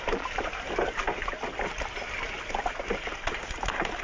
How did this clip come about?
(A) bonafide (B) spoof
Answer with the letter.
A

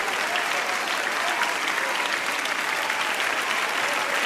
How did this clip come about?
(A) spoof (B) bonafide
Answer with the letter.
B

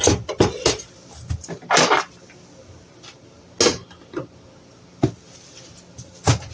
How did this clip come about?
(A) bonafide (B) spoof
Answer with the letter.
A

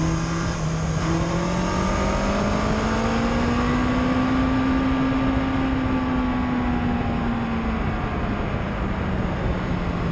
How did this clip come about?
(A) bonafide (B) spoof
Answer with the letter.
A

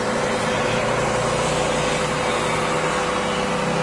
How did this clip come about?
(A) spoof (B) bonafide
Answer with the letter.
B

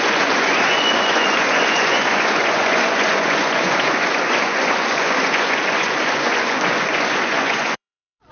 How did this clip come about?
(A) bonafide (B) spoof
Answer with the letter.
B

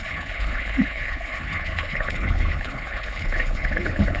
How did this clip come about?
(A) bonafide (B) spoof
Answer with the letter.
B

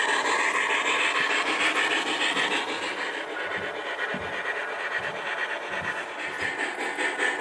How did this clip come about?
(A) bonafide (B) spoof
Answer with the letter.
A